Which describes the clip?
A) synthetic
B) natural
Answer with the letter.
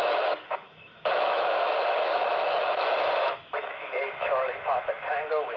A